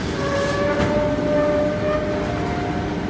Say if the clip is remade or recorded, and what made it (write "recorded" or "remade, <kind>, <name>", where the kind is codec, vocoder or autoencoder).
recorded